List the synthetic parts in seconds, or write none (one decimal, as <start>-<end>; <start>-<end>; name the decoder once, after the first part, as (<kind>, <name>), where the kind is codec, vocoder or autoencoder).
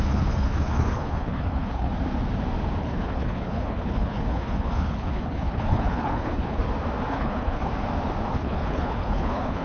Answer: 0.0-1.9 (codec, HILCodec); 2.8-6.6; 7.1-7.7; 8.3-9.6